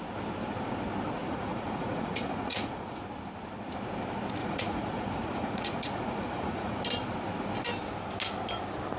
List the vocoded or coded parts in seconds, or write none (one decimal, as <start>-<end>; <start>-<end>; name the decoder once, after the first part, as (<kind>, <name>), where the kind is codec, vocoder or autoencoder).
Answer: 1.2-3.0 (vocoder, Vocos); 4.4-6.8

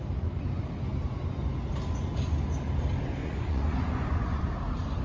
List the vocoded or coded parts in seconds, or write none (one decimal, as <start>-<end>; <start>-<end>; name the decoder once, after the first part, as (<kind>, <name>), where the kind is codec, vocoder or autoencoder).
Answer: 3.2-4.4 (vocoder, Vocos)